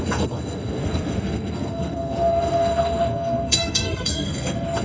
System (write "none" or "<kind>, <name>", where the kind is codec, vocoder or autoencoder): codec, SNAC